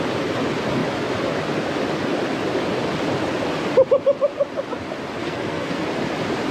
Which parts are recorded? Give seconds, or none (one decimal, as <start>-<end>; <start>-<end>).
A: 0.0-5.2; 5.8-6.5